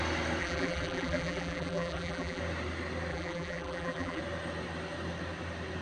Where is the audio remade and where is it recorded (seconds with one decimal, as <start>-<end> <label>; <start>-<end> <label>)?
0.0-0.4 recorded; 0.4-2.4 remade; 2.4-3.1 recorded; 3.1-4.2 remade; 4.2-5.8 recorded